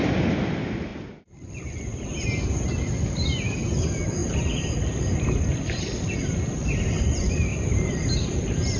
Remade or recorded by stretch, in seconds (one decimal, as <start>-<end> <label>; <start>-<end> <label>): 0.0-0.9 recorded; 0.9-1.5 remade; 1.5-7.5 recorded; 7.5-8.8 remade